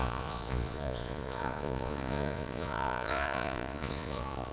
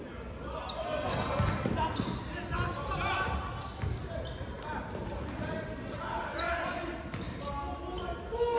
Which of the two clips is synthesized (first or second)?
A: first